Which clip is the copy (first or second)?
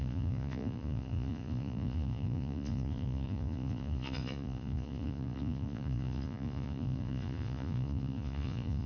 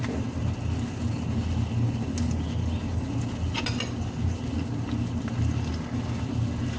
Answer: first